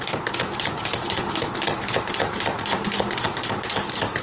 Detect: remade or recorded recorded